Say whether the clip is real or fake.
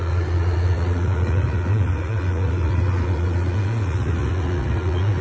fake